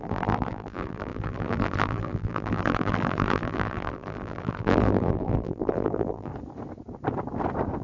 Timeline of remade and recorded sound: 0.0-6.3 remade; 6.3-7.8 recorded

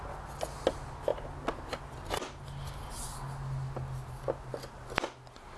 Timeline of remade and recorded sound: 0.0-5.6 recorded

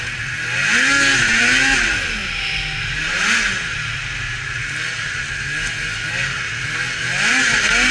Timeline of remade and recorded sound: 0.0-7.9 recorded